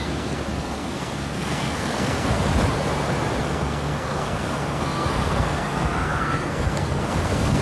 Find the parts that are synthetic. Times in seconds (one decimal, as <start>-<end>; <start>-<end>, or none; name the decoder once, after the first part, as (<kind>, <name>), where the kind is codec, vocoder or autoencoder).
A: 0.0-2.5 (codec, SNAC); 3.4-7.6